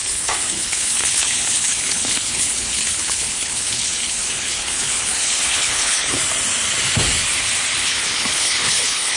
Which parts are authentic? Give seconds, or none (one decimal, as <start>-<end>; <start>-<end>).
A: 6.2-7.8